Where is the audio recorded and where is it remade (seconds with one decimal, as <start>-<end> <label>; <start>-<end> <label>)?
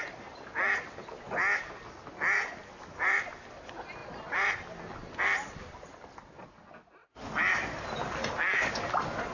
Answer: 0.0-9.3 recorded